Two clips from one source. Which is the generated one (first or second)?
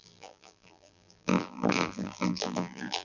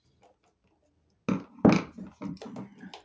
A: first